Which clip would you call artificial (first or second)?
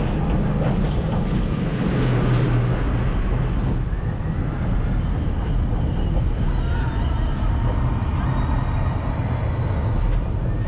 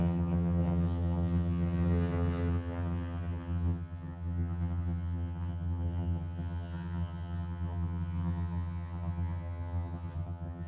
second